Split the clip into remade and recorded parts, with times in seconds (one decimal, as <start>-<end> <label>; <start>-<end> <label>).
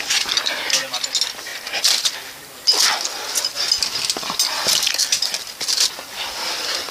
0.0-6.9 recorded